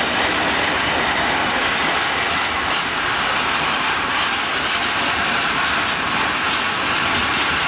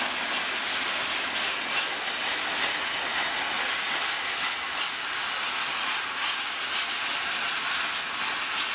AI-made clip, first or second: first